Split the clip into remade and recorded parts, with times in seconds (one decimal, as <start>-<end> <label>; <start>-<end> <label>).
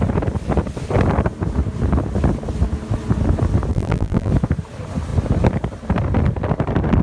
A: 0.0-3.7 recorded; 3.7-4.3 remade; 4.3-7.0 recorded